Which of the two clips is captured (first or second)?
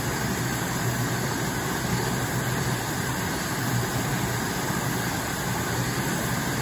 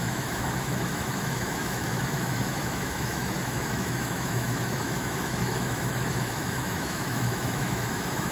first